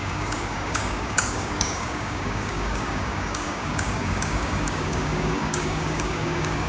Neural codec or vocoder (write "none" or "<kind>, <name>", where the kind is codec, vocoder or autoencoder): codec, DAC